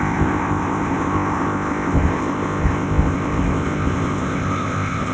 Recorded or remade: remade